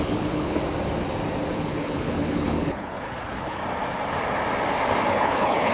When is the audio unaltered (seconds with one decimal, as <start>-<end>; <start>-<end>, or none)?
0.6-1.5; 3.6-5.1